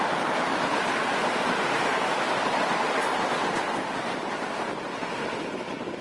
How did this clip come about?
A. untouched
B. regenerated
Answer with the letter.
A